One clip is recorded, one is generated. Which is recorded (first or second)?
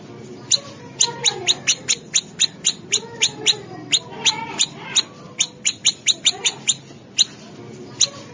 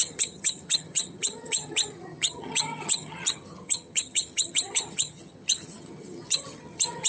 first